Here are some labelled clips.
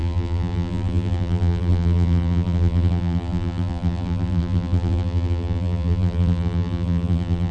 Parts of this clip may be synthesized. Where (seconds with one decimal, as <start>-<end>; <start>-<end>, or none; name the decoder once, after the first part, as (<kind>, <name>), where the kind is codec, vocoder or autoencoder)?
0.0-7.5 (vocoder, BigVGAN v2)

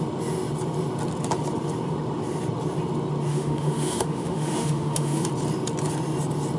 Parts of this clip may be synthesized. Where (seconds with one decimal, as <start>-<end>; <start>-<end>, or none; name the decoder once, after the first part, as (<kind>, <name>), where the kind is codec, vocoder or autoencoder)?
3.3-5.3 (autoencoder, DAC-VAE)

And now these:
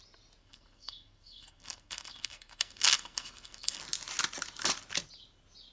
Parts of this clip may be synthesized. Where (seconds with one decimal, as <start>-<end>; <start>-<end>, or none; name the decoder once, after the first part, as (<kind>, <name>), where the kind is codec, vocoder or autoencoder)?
0.4-3.8 (codec, SNAC)

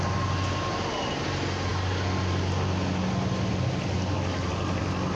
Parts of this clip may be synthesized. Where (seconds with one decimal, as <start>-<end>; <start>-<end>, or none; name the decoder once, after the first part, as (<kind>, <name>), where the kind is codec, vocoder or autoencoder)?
none

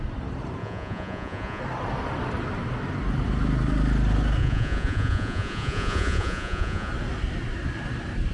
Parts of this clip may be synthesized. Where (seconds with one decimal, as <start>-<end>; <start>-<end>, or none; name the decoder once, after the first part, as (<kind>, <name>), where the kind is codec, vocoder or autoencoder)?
0.6-1.6 (vocoder, Vocos); 4.4-6.9